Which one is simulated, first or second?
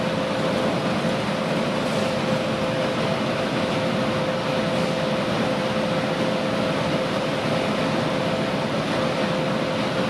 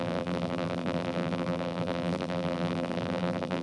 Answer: second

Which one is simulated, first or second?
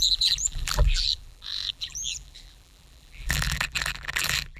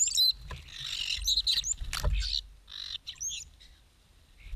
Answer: first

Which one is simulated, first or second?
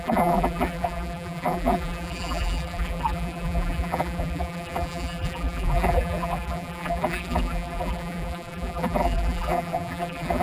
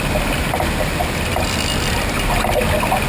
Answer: first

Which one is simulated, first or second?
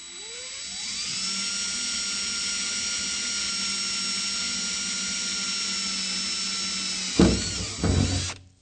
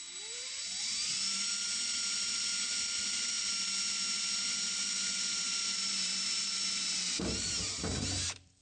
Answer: second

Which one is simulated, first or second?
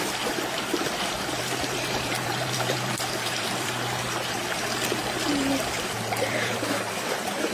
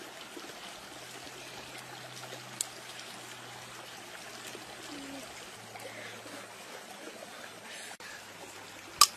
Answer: first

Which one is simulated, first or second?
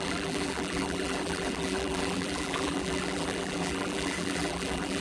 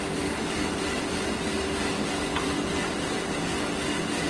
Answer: first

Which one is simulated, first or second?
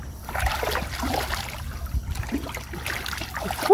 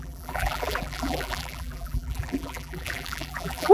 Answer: second